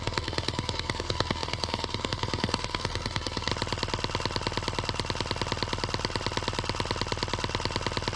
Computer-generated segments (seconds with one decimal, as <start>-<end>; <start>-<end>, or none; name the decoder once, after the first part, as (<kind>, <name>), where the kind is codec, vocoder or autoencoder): 0.0-3.5 (codec, SNAC)